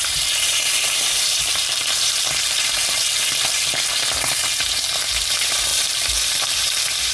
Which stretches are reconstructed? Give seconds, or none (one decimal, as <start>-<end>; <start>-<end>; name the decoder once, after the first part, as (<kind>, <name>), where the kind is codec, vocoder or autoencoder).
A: 0.0-3.1 (vocoder, BigVGAN v2); 4.6-7.1